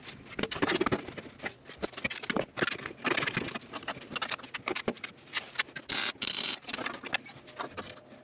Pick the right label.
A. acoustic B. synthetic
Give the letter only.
A